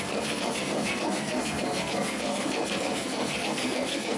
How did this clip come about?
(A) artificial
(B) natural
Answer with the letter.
A